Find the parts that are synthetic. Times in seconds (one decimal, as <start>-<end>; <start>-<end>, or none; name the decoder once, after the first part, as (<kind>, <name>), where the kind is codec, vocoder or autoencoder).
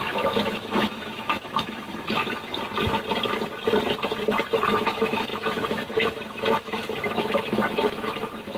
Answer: 0.0-2.5 (autoencoder, DAC-VAE); 4.7-8.6